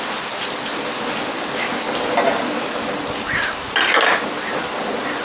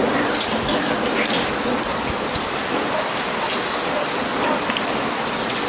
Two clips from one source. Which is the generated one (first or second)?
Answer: second